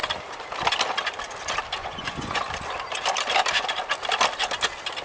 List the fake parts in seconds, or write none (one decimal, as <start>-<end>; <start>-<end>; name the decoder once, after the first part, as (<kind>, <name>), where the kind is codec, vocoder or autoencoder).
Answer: 1.8-2.4 (vocoder, Vocos)